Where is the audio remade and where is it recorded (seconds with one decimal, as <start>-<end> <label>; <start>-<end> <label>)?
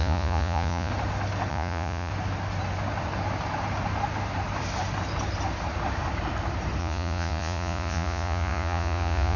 0.0-0.9 remade; 0.9-1.5 recorded; 1.5-2.1 remade; 2.1-6.8 recorded; 6.8-9.4 remade